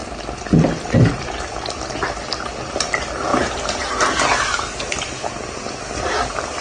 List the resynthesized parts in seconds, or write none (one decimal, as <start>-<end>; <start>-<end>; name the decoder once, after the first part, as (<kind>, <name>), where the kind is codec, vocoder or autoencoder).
none